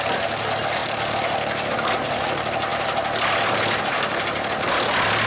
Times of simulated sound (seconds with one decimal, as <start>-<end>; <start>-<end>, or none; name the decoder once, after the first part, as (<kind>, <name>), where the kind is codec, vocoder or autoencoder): none